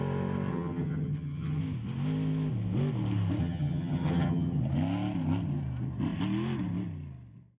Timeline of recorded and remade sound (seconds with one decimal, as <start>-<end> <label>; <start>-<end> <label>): 0.0-0.5 recorded; 0.5-1.6 remade; 1.6-3.4 recorded; 3.4-4.6 remade; 4.6-7.6 recorded